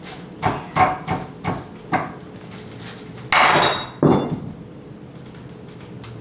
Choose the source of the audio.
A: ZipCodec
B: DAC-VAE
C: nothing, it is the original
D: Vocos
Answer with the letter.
C